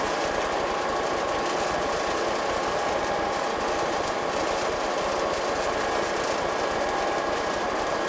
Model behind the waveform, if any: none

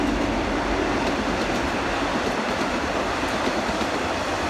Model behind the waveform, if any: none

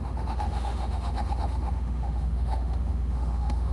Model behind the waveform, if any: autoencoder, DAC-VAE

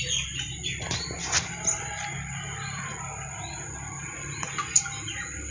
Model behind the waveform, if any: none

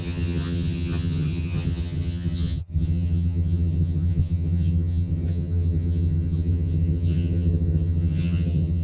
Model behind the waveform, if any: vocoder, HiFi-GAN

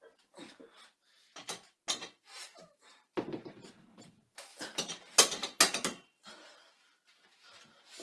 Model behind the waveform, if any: none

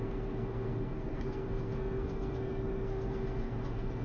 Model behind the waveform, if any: codec, SNAC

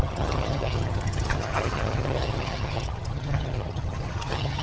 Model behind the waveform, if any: vocoder, HiFi-GAN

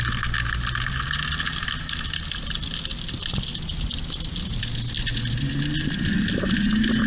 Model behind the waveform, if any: none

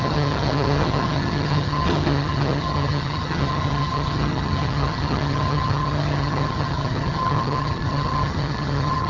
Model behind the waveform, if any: vocoder, HiFi-GAN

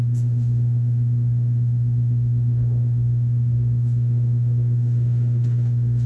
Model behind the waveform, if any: autoencoder, DAC-VAE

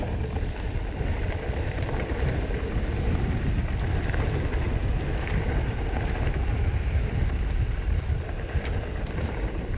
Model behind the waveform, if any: vocoder, BigVGAN v2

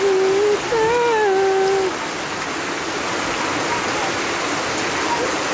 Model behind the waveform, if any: none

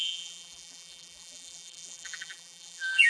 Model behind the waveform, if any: vocoder, BigVGAN v2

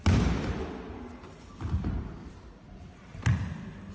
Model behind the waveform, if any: none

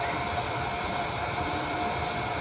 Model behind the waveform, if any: vocoder, BigVGAN v2